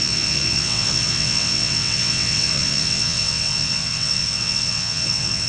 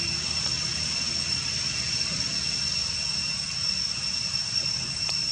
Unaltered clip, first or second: second